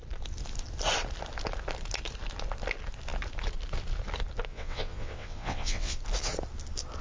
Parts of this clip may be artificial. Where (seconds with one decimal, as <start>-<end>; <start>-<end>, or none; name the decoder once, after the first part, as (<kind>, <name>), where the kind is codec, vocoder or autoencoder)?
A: 4.5-6.0 (vocoder, WaveNeXt)